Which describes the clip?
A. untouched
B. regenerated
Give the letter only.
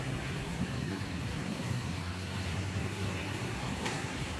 B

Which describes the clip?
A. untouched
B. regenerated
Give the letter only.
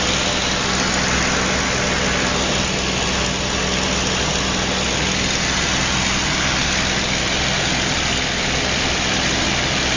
A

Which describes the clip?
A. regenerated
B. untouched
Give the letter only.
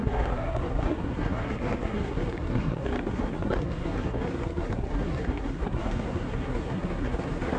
A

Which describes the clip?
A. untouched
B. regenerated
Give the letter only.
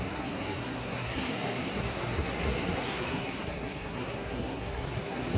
B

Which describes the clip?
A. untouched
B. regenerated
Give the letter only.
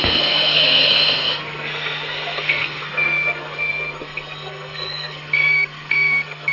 B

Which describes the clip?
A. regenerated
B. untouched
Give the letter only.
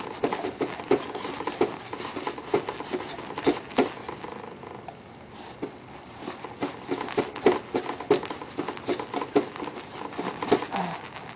B